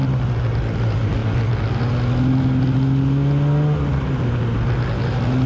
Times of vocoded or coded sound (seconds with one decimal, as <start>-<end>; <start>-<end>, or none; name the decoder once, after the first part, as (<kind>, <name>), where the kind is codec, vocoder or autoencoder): none